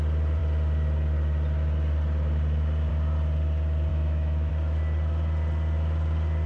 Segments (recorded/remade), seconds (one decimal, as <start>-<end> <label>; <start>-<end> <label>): 0.0-3.9 recorded; 3.9-4.5 remade; 4.5-6.5 recorded